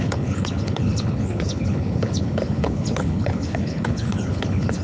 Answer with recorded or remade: remade